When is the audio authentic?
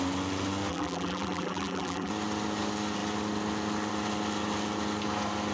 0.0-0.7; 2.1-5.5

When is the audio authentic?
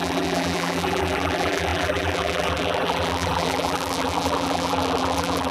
none